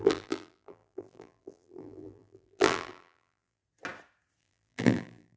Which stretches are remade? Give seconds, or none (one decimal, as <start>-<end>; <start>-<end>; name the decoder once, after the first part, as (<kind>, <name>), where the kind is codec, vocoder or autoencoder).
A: 0.0-3.6 (vocoder, BigVGAN v2); 4.4-5.4